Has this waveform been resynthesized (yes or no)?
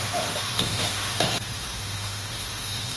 yes